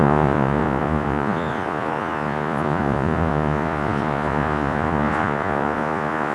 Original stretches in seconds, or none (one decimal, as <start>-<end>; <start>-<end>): none